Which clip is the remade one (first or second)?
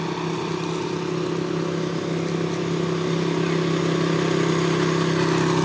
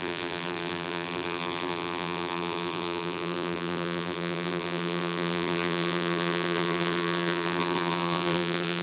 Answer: second